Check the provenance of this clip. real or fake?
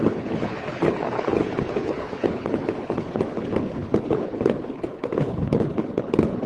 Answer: fake